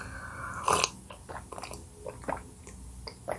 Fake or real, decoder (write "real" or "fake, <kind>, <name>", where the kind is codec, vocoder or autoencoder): real